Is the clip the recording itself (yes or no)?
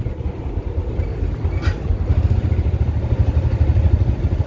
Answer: yes